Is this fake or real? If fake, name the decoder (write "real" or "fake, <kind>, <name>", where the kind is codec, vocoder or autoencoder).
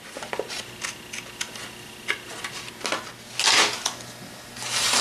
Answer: real